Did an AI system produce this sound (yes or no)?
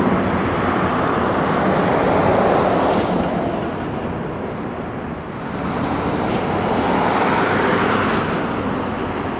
no